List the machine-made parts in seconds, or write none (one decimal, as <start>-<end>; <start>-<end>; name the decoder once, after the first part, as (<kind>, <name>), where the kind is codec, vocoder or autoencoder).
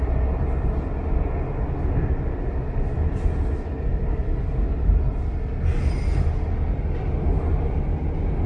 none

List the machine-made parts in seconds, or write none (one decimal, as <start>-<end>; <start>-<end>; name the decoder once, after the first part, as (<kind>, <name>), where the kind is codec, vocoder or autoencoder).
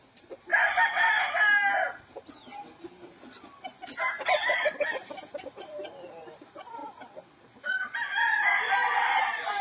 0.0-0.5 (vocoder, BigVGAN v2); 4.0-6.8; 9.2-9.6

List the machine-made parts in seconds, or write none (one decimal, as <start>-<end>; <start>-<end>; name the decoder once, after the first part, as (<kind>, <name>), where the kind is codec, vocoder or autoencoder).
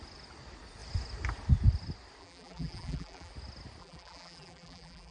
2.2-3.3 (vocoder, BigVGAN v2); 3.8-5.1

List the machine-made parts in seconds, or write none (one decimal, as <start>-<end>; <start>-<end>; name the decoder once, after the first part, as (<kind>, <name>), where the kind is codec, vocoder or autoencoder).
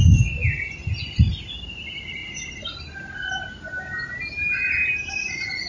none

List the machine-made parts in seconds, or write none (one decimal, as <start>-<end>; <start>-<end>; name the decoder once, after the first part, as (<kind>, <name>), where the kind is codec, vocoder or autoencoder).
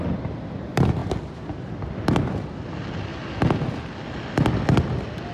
0.0-1.0 (vocoder, BigVGAN v2); 1.8-3.1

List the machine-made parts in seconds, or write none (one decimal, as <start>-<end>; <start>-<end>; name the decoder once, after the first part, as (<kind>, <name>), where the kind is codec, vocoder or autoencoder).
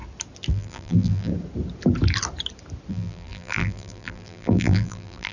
0.5-1.3 (vocoder, BigVGAN v2); 2.9-5.3